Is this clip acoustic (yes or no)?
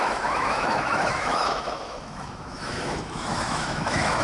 no